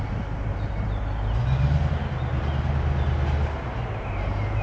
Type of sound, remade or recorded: recorded